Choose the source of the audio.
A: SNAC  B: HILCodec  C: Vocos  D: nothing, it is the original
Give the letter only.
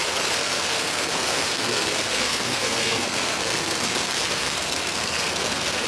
A